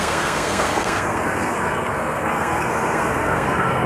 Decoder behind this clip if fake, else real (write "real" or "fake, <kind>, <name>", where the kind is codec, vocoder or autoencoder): fake, codec, SNAC